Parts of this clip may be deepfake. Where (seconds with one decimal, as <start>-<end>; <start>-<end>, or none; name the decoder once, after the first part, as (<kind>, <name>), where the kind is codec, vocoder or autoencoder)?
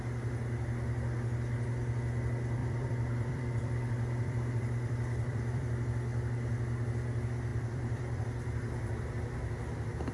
2.6-5.7 (vocoder, BigVGAN v2); 7.5-9.1